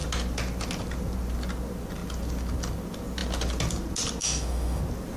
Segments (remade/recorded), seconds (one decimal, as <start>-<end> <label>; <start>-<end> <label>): 0.0-4.2 recorded; 4.2-4.8 remade; 4.8-5.2 recorded